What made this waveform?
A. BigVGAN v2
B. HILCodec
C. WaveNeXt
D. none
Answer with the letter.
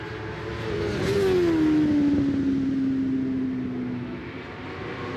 D